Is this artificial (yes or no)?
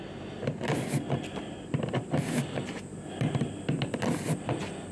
no